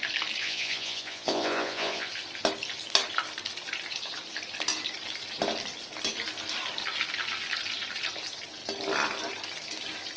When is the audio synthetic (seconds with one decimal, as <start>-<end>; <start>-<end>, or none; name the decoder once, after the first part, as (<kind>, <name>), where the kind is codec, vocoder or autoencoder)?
0.4-2.1 (vocoder, Vocos)